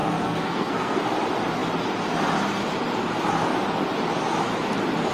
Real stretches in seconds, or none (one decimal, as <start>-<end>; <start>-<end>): 1.0-5.1